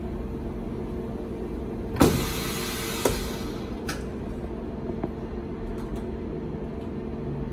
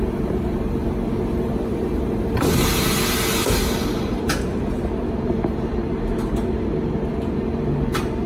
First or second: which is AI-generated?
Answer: second